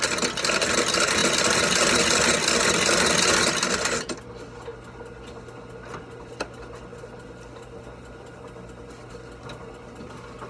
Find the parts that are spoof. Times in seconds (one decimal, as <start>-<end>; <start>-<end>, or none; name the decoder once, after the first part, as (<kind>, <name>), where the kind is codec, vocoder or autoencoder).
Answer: none

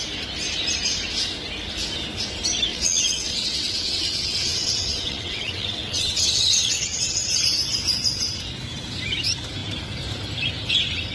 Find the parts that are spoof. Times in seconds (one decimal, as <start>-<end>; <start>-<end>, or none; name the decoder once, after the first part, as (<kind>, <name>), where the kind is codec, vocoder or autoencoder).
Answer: 2.7-7.3 (vocoder, WaveNeXt)

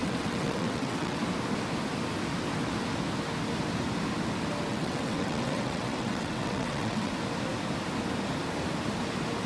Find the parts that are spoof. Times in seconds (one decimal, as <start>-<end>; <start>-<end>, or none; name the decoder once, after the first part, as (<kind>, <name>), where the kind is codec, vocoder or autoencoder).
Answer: 0.0-1.2 (vocoder, WaveNeXt); 4.7-7.1

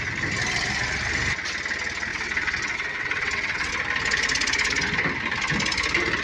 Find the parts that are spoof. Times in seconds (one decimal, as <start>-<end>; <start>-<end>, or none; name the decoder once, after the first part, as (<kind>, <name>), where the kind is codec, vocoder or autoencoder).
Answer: 2.1-3.7 (vocoder, WaveNeXt)